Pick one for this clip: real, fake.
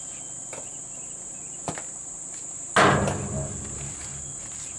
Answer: real